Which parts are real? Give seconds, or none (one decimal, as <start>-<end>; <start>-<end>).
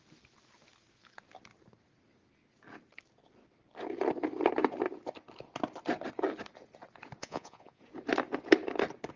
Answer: 0.0-7.2; 7.8-9.2